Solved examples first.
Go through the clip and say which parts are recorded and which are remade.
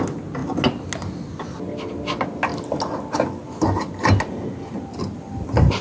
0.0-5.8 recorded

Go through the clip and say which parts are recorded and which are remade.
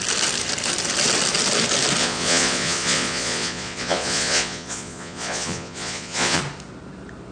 0.0-2.0 recorded; 2.0-6.4 remade; 6.4-7.3 recorded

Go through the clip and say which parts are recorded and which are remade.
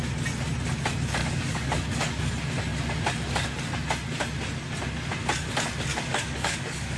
0.0-1.2 recorded; 1.2-2.2 remade; 2.2-5.9 recorded; 5.9-7.0 remade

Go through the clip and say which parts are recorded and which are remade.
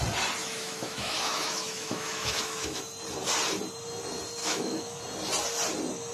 0.0-0.4 recorded; 0.4-2.8 remade; 2.8-4.4 recorded; 4.4-5.0 remade; 5.0-6.1 recorded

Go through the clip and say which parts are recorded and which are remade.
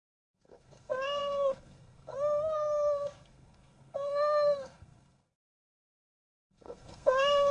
0.0-7.5 remade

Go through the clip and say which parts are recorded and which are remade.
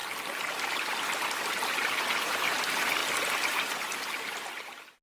0.0-3.0 recorded; 3.0-4.5 remade; 4.5-5.0 recorded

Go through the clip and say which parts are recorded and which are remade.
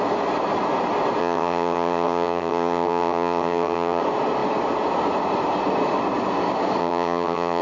0.0-1.2 recorded; 1.2-4.0 remade; 4.0-6.8 recorded; 6.8-7.6 remade